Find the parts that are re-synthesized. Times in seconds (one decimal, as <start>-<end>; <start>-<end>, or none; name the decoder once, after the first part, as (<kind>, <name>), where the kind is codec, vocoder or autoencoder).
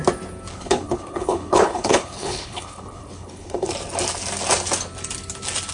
0.5-3.7 (codec, HILCodec)